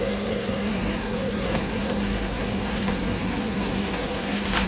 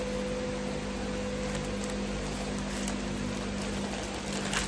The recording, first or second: second